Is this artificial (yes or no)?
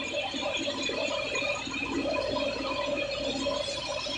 no